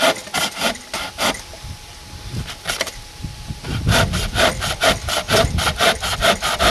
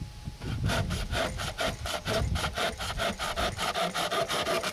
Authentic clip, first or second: second